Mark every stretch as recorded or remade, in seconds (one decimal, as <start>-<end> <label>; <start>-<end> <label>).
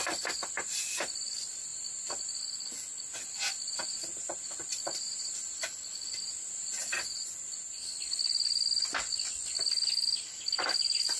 0.0-11.2 recorded